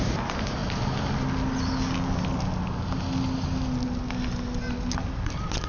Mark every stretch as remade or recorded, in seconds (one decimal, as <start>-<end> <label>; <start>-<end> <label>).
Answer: 0.0-5.7 recorded